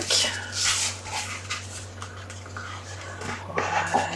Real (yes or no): yes